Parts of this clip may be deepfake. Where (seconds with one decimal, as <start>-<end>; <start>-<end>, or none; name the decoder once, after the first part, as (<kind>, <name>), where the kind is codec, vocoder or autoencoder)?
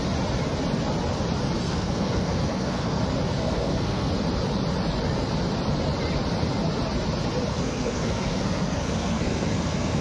1.6-3.0 (codec, SNAC); 3.4-4.1; 7.5-10.0